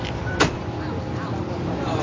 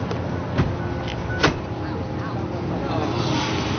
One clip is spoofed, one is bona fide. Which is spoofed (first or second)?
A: first